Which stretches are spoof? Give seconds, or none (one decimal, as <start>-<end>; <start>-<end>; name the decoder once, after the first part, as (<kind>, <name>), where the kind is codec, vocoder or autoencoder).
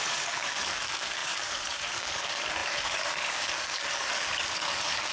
0.0-5.1 (codec, DAC)